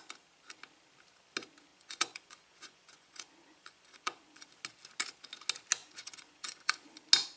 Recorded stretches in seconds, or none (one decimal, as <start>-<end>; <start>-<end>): 0.0-1.7; 4.5-5.8; 6.8-7.4